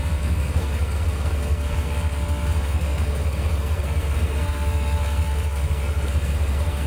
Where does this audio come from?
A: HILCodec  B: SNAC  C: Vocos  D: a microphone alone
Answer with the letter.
B